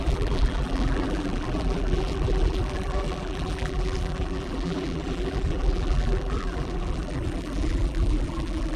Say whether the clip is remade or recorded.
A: remade